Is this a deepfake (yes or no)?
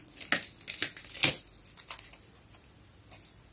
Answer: no